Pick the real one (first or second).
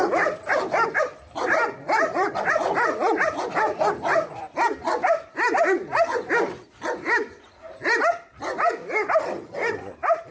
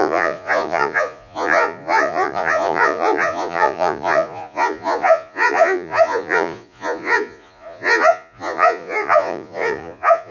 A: first